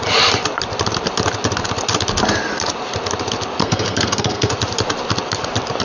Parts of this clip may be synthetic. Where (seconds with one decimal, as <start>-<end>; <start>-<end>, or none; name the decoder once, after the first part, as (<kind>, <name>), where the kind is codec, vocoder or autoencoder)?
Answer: 3.6-4.5 (codec, SNAC)